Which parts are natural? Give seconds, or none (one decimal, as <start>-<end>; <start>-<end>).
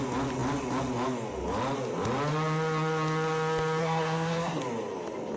0.0-3.8; 4.6-5.4